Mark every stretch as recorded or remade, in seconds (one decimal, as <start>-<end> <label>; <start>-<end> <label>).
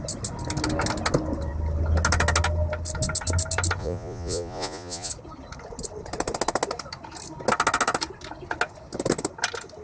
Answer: 0.0-3.8 recorded; 3.8-5.1 remade; 5.1-9.8 recorded